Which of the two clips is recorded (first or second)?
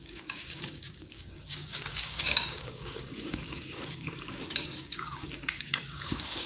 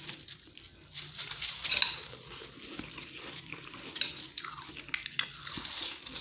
second